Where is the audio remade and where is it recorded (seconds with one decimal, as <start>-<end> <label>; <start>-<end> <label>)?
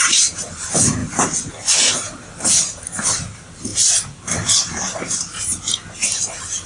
0.0-6.7 recorded